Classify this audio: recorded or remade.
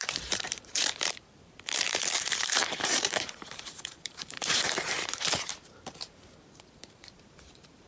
remade